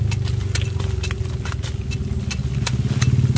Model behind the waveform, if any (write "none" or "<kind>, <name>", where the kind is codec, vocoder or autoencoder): none